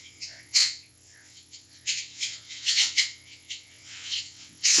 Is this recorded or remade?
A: remade